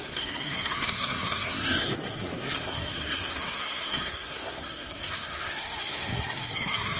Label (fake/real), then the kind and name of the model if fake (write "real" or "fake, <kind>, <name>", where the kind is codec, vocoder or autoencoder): fake, codec, SNAC